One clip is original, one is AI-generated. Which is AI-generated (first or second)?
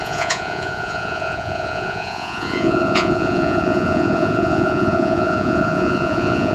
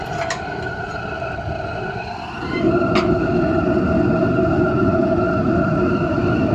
first